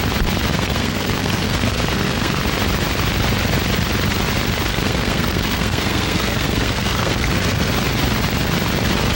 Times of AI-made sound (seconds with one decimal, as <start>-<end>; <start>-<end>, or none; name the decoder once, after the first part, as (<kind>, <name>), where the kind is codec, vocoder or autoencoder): 0.5-2.4 (codec, SNAC); 4.7-7.7

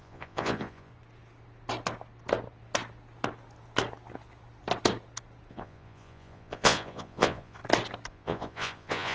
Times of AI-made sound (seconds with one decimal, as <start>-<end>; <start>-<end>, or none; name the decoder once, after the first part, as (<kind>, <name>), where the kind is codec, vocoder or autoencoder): 0.0-0.9 (vocoder, Vocos); 5.5-7.6; 8.1-9.1

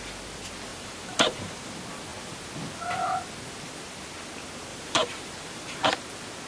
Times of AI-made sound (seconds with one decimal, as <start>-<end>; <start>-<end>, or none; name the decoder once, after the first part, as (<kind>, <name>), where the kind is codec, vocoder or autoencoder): 0.7-1.7 (vocoder, BigVGAN v2); 4.7-5.9

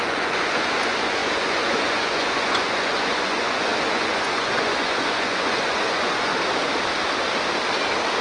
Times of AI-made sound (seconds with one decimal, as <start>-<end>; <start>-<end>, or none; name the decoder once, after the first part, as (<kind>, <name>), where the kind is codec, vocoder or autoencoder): 0.0-6.3 (vocoder, Vocos)